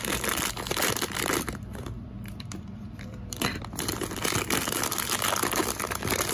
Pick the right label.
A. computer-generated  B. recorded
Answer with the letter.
A